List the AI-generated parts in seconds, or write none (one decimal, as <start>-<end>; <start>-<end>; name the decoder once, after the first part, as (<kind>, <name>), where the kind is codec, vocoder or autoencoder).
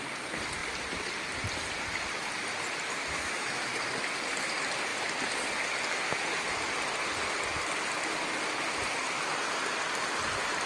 2.9-3.7 (autoencoder, DAC-VAE)